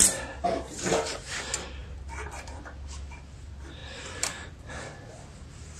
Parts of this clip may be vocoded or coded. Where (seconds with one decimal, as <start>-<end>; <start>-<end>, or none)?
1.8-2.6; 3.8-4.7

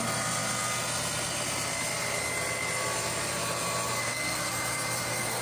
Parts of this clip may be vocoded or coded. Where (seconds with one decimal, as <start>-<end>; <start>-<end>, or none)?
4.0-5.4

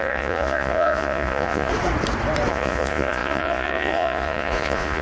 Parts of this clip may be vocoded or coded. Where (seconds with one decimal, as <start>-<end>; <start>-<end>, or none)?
0.0-1.7; 2.5-5.0

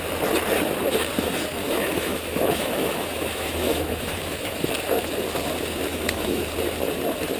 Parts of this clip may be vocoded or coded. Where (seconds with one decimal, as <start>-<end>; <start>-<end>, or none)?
1.6-4.6; 5.9-6.4

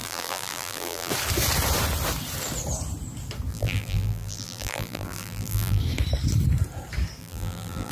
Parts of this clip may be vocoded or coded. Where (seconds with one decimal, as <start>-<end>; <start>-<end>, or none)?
0.0-1.1; 3.5-5.8; 7.2-7.9

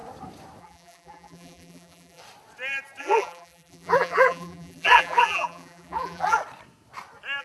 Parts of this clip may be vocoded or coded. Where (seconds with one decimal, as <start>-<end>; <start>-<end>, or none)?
0.6-2.2; 3.0-6.4

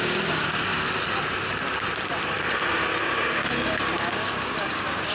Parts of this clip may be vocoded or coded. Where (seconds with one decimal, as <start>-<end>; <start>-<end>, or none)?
0.0-0.7; 3.8-5.1

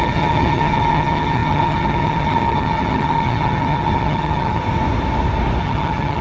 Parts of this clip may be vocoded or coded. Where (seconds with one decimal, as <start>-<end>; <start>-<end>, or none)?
0.0-4.6; 5.6-6.2